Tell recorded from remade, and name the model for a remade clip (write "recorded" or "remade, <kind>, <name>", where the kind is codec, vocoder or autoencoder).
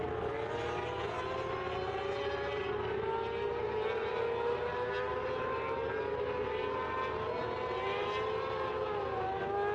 recorded